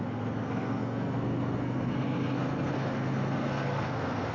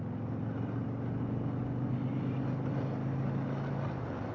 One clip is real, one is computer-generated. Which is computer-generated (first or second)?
first